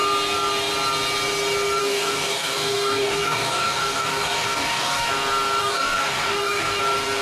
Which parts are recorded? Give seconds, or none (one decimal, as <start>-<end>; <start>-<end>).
0.0-1.8; 5.1-5.6; 6.8-7.2